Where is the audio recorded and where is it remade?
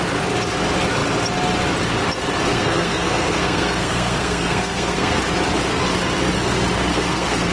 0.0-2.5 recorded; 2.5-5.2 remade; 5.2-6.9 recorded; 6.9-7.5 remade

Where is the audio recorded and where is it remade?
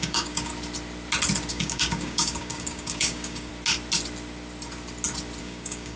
0.0-0.5 remade; 0.5-1.5 recorded; 1.5-3.5 remade; 3.5-5.4 recorded; 5.4-6.0 remade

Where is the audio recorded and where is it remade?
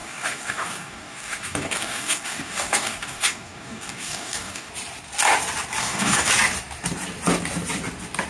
0.0-4.7 remade; 4.7-5.8 recorded; 5.8-6.3 remade; 6.3-8.3 recorded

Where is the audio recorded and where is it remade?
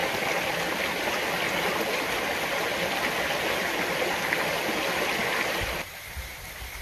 0.0-1.1 remade; 1.1-6.8 recorded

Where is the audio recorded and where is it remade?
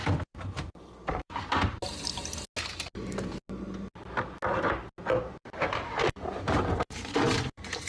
0.0-0.7 recorded; 0.7-1.8 remade; 1.8-5.2 recorded; 5.2-7.9 remade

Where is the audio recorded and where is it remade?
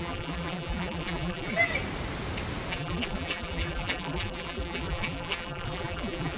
0.0-1.7 remade; 1.7-2.7 recorded; 2.7-6.4 remade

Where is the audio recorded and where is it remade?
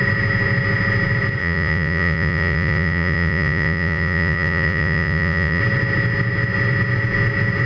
0.0-1.4 recorded; 1.4-5.6 remade; 5.6-7.7 recorded